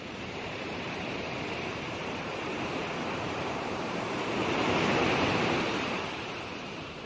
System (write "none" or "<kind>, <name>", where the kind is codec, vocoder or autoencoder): vocoder, BigVGAN v2